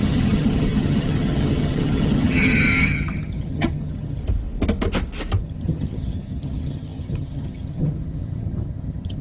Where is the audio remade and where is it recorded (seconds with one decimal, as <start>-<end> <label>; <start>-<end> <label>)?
0.0-4.2 remade; 4.2-5.4 recorded; 5.4-9.2 remade